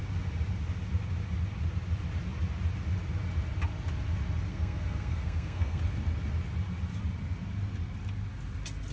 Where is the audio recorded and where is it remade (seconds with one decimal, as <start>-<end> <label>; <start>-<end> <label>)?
0.0-4.5 recorded; 4.5-5.8 remade; 5.8-8.9 recorded